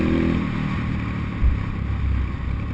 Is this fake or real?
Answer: real